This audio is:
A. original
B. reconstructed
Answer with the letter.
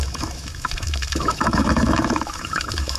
B